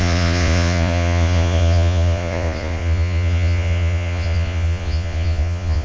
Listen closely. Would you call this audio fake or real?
fake